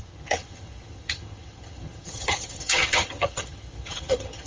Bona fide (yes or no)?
no